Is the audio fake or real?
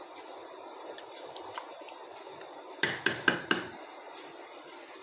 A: fake